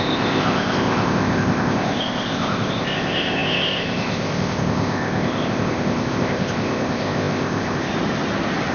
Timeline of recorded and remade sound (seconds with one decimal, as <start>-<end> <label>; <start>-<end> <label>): 0.0-7.9 remade; 7.9-8.7 recorded